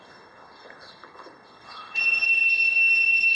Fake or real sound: fake